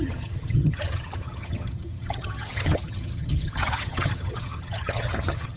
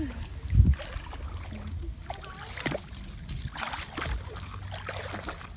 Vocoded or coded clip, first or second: first